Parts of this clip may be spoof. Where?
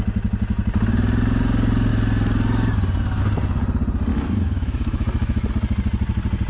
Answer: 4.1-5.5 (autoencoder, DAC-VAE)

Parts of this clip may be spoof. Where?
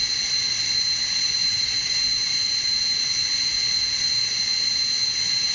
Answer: 1.4-2.4 (vocoder, BigVGAN v2)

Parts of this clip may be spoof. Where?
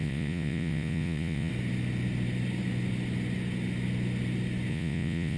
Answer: 0.0-1.5 (vocoder, Vocos); 4.7-5.4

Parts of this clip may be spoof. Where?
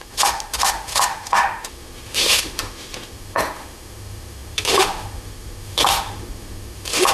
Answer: 0.0-7.1 (autoencoder, DAC-VAE)